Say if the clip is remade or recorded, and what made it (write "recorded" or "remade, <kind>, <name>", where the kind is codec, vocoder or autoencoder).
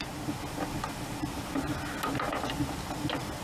recorded